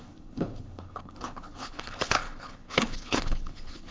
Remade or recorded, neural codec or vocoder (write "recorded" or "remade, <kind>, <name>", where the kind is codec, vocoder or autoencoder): remade, codec, HILCodec